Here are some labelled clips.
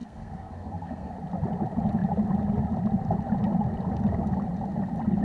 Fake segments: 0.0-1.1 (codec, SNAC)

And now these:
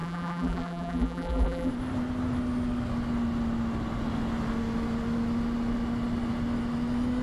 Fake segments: 0.0-1.7 (vocoder, BigVGAN v2)

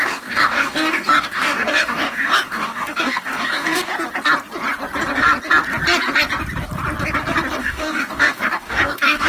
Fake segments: 0.0-3.9 (codec, DAC); 7.6-9.3

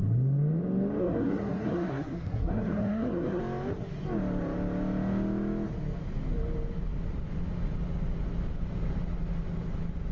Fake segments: 1.0-3.4 (codec, SNAC)

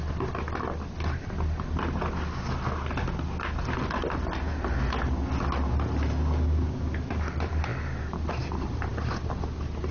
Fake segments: none

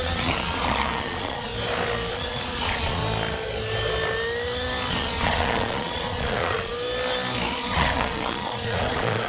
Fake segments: 0.0-1.5 (vocoder, Vocos); 2.1-3.0; 4.9-6.7; 7.5-9.3

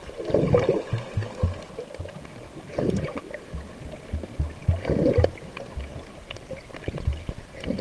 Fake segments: none